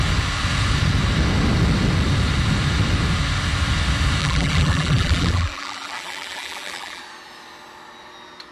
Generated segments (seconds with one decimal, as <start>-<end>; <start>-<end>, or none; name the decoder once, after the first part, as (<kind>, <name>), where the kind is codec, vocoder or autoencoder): 4.2-7.0 (vocoder, BigVGAN v2)